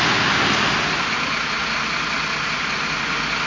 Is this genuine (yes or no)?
yes